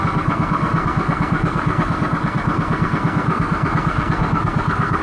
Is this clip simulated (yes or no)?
yes